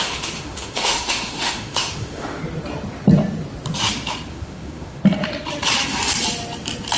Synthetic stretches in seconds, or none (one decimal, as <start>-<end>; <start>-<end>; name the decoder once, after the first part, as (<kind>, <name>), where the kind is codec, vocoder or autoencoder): 0.0-2.4 (autoencoder, DAC-VAE); 4.3-5.0